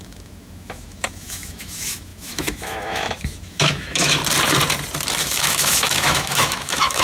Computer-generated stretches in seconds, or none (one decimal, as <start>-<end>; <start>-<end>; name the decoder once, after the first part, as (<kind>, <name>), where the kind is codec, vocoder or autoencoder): 0.0-4.2 (autoencoder, DAC-VAE); 5.2-7.0

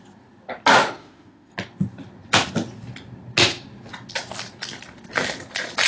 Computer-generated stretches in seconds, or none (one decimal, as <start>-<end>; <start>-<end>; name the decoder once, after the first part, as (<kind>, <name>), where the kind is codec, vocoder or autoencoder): 0.8-1.5 (autoencoder, DAC-VAE)

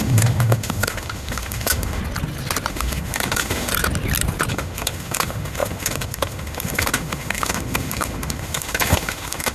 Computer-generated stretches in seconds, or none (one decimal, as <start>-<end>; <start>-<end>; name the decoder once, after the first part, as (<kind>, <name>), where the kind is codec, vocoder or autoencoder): 0.0-2.0 (autoencoder, DAC-VAE); 2.7-3.7; 4.5-9.5

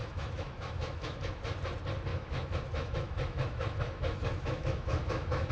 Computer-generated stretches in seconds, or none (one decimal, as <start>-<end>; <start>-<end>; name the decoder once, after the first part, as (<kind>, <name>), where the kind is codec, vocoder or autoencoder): 0.0-1.4 (autoencoder, DAC-VAE); 2.1-5.5